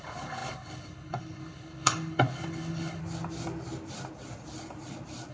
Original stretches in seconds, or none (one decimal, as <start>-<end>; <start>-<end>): 3.0-5.3